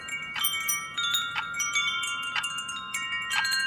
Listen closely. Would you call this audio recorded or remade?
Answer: remade